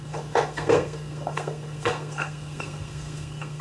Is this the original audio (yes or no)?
no